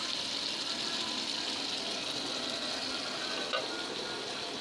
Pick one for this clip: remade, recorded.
recorded